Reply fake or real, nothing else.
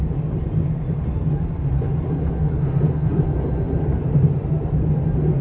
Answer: real